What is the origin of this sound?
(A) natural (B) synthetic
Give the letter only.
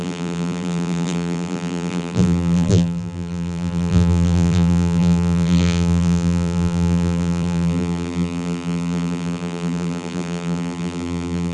B